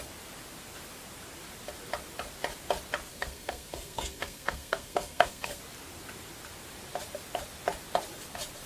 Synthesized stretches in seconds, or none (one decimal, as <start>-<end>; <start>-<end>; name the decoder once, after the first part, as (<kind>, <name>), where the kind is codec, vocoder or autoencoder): 3.1-5.6 (codec, SNAC)